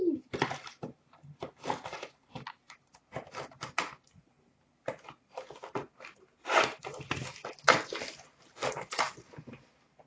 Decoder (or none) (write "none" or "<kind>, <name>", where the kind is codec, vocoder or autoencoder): none